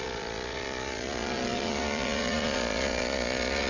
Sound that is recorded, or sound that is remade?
remade